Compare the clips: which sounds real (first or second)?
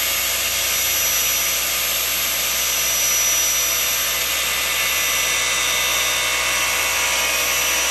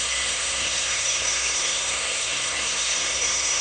first